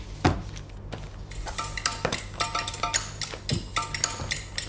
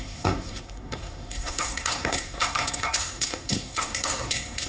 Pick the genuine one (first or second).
first